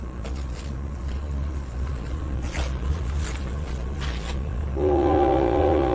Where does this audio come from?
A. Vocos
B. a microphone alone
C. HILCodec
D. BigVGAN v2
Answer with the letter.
A